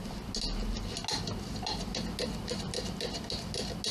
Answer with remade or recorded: recorded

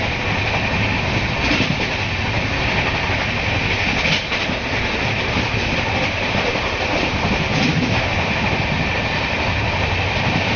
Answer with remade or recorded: recorded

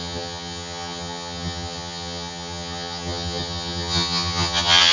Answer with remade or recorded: remade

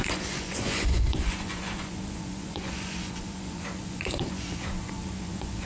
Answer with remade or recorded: remade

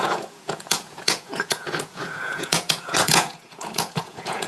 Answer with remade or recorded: remade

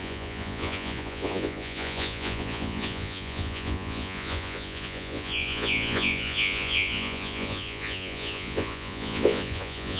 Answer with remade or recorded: remade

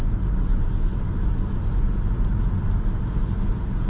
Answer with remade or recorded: recorded